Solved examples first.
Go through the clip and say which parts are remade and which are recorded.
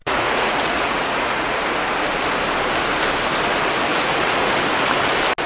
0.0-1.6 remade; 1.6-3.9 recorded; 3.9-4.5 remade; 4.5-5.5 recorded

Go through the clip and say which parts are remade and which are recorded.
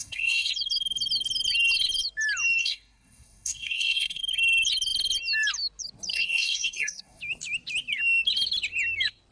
0.0-0.5 remade; 0.5-2.6 recorded; 2.6-4.2 remade; 4.2-6.1 recorded; 6.1-7.2 remade; 7.2-9.3 recorded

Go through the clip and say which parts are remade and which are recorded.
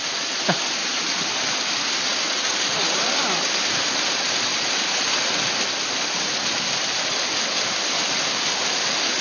0.0-2.1 remade; 2.1-2.7 recorded; 2.7-4.5 remade; 4.5-5.7 recorded; 5.7-9.2 remade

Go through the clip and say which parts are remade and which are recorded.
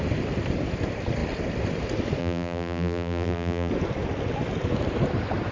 0.0-2.2 recorded; 2.2-3.7 remade; 3.7-5.5 recorded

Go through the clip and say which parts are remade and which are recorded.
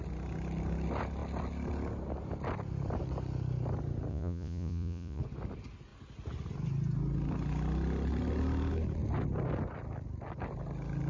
0.0-4.1 recorded; 4.1-5.2 remade; 5.2-11.1 recorded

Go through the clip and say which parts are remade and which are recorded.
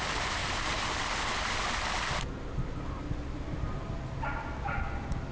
0.0-5.3 recorded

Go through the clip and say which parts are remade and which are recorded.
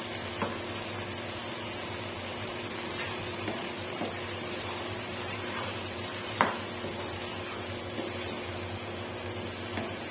0.0-2.3 recorded; 2.3-6.5 remade; 6.5-10.1 recorded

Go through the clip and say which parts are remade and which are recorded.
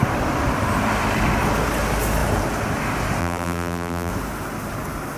0.0-3.2 recorded; 3.2-4.1 remade; 4.1-5.2 recorded